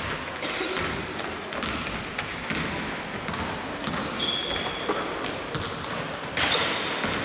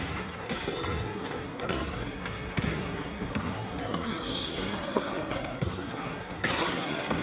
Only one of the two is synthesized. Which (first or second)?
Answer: second